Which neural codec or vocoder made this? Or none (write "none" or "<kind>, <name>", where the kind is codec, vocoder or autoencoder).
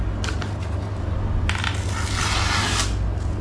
none